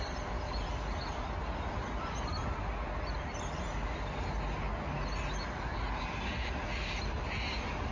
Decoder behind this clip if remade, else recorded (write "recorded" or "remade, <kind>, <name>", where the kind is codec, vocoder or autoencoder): recorded